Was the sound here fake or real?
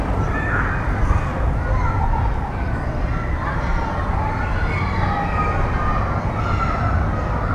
real